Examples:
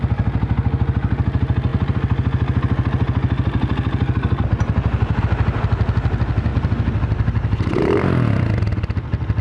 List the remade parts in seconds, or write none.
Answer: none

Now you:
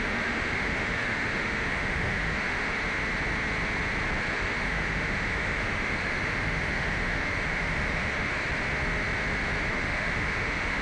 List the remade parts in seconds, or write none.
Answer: 0.0-2.8; 4.3-8.3; 9.7-10.8

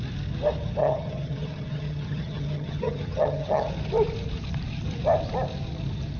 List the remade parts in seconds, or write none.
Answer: 0.8-3.7

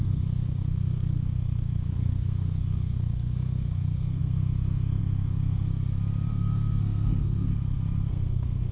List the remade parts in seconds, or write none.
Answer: 0.0-5.7; 6.3-7.5; 8.1-8.7